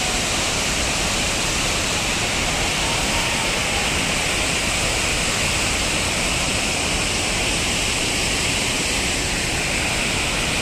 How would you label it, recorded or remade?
remade